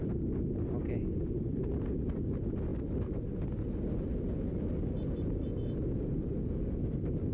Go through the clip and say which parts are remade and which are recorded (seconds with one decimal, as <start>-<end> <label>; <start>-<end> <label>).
0.0-7.3 recorded